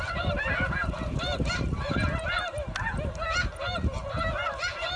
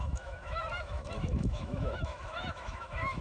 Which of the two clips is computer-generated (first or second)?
second